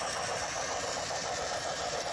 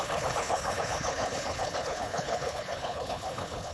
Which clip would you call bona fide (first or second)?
first